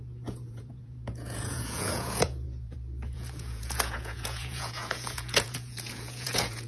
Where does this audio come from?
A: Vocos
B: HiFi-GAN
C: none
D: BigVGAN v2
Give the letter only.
A